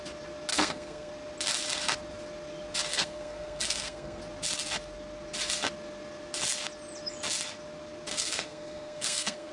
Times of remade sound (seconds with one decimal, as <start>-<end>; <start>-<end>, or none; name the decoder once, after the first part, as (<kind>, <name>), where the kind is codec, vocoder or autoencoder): 0.5-1.1 (codec, SNAC); 2.9-4.2; 8.1-9.5